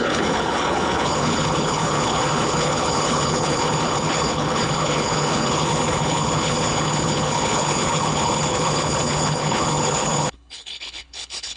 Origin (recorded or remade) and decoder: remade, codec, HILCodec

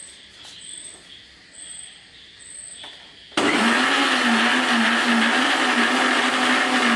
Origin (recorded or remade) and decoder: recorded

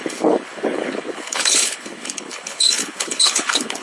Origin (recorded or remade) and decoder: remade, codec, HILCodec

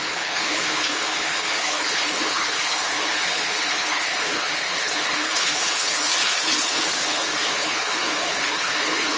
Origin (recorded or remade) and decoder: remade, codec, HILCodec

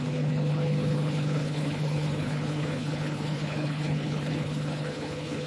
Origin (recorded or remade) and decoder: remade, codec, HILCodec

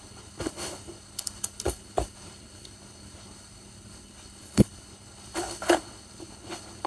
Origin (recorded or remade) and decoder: remade, codec, HILCodec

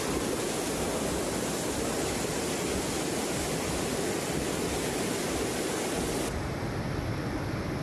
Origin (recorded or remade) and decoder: recorded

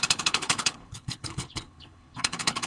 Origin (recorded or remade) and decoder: remade, codec, HILCodec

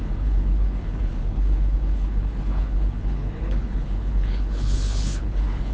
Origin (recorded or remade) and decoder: remade, codec, HILCodec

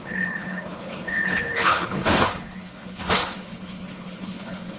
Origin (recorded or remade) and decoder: remade, codec, HILCodec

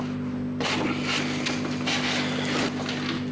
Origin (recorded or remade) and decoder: recorded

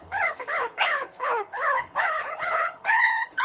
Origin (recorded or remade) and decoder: remade, codec, HILCodec